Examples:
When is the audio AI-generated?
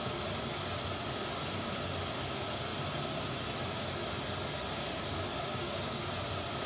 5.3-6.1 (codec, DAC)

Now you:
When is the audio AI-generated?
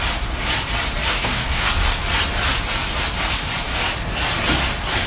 1.1-1.7 (codec, DAC)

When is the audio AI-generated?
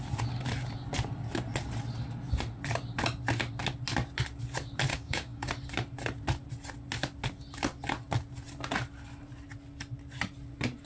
4.9-5.5 (codec, DAC)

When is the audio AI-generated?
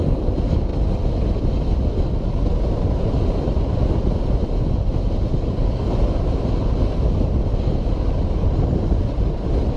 5.3-5.8 (codec, DAC)